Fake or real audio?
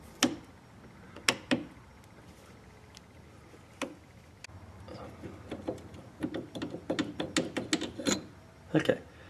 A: real